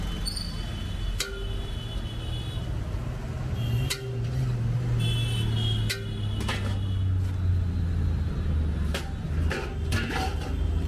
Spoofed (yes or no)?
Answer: no